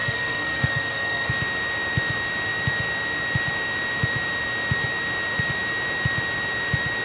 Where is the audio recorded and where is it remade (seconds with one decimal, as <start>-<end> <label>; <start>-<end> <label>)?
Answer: 0.0-1.3 remade; 1.3-7.0 recorded